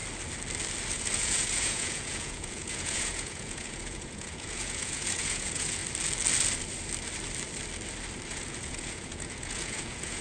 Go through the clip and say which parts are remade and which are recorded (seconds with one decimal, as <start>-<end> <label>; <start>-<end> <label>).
0.0-0.9 recorded; 0.9-5.8 remade; 5.8-8.3 recorded; 8.3-10.2 remade